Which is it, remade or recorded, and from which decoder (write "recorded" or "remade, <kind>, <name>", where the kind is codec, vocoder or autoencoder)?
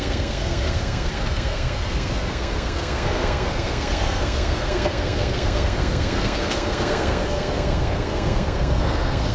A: remade, codec, SNAC